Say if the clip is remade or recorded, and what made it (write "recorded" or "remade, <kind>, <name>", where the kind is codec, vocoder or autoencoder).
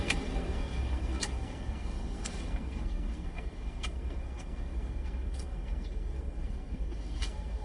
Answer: remade, codec, SNAC